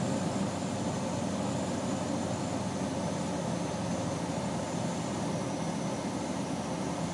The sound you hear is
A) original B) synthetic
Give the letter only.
A